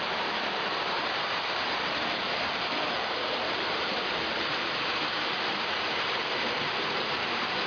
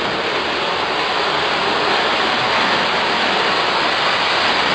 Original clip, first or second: second